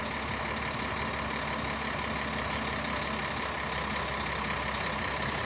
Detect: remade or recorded recorded